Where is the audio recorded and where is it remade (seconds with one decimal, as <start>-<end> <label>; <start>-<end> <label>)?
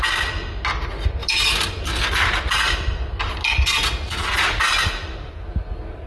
0.0-6.1 recorded